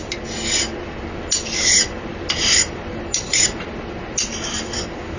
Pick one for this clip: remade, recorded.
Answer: recorded